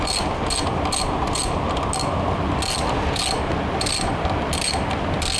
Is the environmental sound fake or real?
real